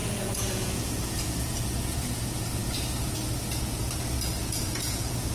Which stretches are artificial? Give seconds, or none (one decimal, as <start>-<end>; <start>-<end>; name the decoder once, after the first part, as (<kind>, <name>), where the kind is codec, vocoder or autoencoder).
0.0-2.6 (vocoder, Vocos); 4.4-5.3